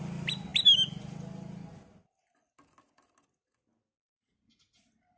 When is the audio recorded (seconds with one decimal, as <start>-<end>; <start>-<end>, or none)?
0.0-5.2